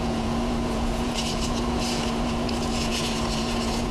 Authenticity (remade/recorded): remade